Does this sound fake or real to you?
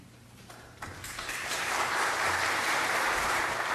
fake